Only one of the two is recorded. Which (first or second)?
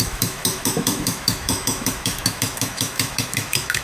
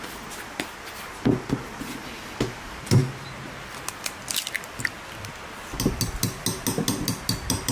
second